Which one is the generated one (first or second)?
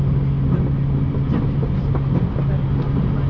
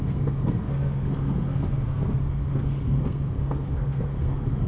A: second